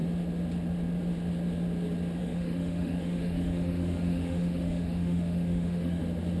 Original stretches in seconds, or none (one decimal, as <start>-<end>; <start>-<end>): 0.0-2.2; 6.0-6.4